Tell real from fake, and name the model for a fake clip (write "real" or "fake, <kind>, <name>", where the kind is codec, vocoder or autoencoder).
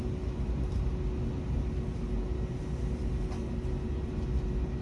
real